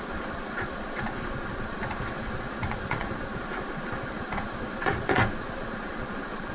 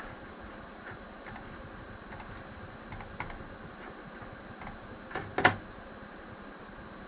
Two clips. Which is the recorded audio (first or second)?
second